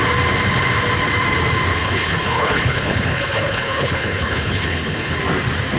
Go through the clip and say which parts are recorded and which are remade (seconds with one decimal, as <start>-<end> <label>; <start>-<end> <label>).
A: 0.0-1.7 recorded; 1.7-5.2 remade; 5.2-5.8 recorded